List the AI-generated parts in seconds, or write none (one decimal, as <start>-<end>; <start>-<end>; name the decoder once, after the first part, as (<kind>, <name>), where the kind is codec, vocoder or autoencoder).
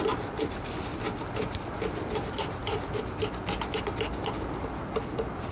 none